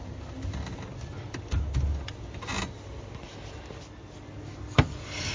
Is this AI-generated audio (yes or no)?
no